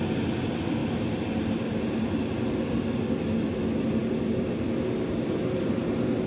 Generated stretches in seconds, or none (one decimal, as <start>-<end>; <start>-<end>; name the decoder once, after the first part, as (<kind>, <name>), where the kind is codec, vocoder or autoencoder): none